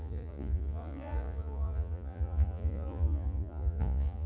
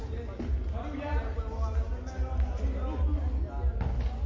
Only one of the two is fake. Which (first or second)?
first